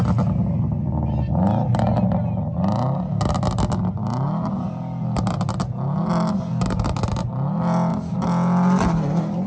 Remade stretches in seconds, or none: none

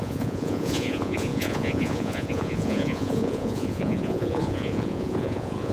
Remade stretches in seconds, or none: 0.0-5.7 (vocoder, Vocos)

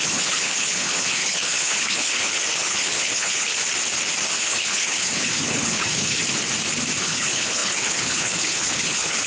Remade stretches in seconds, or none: 0.0-3.5 (codec, HILCodec); 4.4-6.2; 7.0-9.3

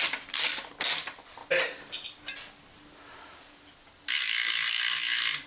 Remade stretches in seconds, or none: none

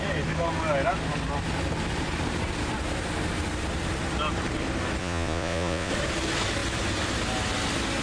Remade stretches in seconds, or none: 5.0-5.9 (vocoder, Vocos)

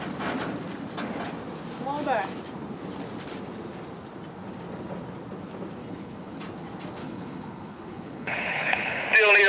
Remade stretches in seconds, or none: 5.8-6.4 (codec, HILCodec); 7.0-9.0